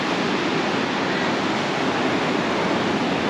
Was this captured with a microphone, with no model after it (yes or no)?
yes